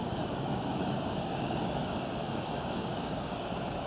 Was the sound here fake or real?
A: fake